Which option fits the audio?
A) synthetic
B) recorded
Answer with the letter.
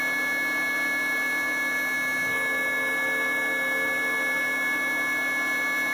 B